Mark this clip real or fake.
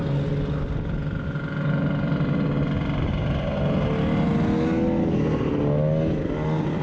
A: real